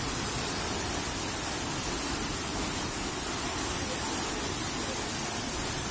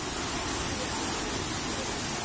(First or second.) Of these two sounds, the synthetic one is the first